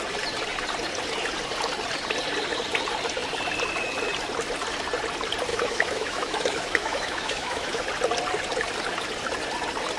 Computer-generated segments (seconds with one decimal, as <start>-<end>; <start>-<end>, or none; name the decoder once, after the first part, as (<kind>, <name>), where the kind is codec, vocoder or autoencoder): 5.5-7.8 (autoencoder, DAC-VAE)